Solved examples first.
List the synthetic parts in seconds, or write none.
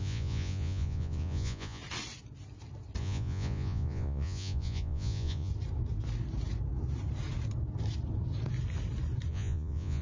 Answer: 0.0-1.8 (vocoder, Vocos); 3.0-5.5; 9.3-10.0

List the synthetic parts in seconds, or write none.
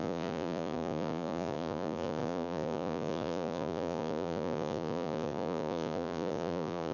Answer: 0.0-6.9 (vocoder, Vocos)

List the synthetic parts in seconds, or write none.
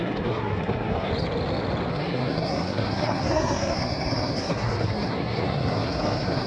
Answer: 0.0-1.1 (codec, SNAC); 1.9-6.5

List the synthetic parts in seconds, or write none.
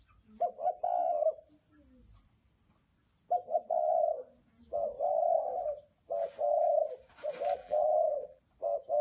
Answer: 7.6-8.4 (vocoder, BigVGAN v2)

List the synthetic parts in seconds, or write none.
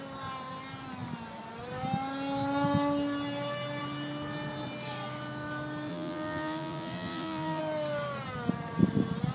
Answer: 5.9-7.6 (vocoder, BigVGAN v2)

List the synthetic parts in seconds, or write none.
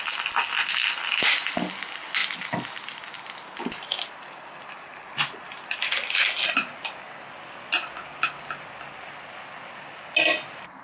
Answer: none